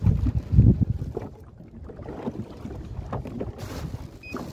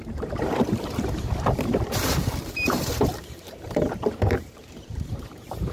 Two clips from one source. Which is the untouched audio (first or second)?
first